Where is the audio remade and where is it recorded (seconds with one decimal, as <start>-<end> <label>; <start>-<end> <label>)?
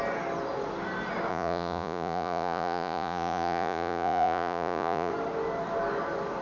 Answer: 0.0-1.3 recorded; 1.3-5.1 remade; 5.1-6.4 recorded